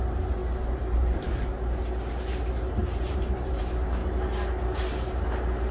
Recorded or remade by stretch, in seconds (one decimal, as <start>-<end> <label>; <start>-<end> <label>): 0.0-2.8 recorded; 2.8-3.6 remade; 3.6-5.7 recorded